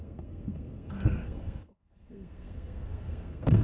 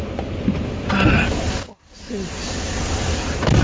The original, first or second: second